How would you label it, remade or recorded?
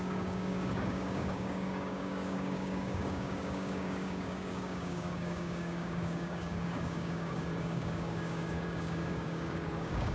remade